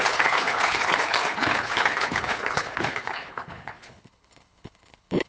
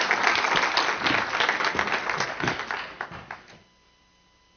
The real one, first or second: second